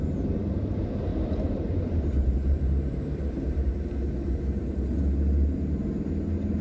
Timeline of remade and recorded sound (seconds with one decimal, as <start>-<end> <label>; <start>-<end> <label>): 0.0-1.1 recorded; 1.1-3.7 remade; 3.7-6.6 recorded